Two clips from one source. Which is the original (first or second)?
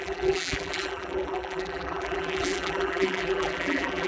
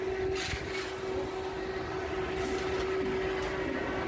second